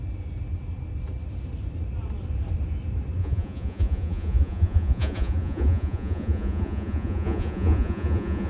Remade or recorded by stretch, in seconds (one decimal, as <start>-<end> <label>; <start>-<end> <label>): 0.0-3.2 recorded; 3.2-8.5 remade